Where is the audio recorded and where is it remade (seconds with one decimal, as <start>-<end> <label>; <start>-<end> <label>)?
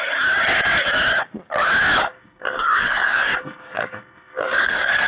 0.0-2.0 recorded; 2.0-5.1 remade